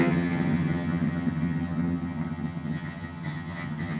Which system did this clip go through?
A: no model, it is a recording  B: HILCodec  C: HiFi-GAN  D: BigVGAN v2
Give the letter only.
C